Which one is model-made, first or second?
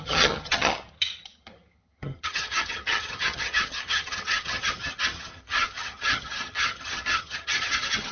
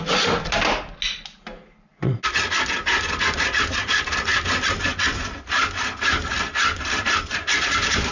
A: first